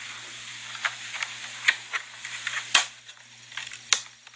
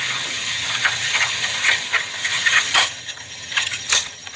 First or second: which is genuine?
first